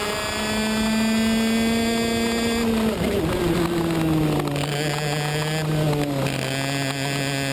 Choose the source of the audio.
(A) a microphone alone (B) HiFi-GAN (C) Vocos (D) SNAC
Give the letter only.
A